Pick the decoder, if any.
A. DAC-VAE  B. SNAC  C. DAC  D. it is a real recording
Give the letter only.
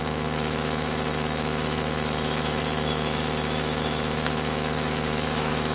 A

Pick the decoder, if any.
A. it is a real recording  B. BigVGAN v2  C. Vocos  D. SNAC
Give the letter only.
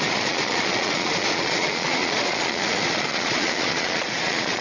C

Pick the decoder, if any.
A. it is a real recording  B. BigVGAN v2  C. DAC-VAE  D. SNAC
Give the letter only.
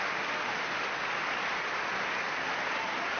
A